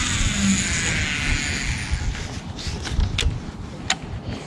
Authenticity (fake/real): real